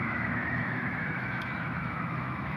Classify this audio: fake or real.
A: fake